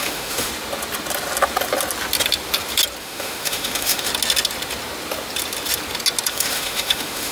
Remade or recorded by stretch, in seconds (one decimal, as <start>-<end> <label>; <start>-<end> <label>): 0.0-0.5 remade; 0.5-3.0 recorded; 3.0-4.1 remade; 4.1-6.3 recorded; 6.3-7.3 remade